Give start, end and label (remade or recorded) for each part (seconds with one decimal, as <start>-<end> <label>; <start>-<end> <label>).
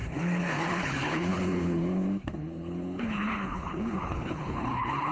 0.0-5.1 remade